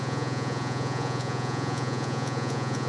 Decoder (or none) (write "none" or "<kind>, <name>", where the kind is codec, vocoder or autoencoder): vocoder, Vocos